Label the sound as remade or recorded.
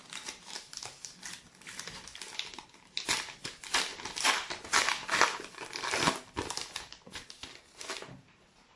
recorded